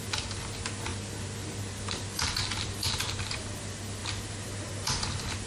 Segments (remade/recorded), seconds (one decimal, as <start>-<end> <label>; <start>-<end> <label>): 0.0-5.5 recorded